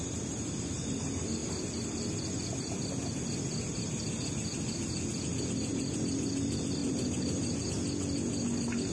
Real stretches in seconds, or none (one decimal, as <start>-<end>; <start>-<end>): 0.0-6.8; 7.6-8.9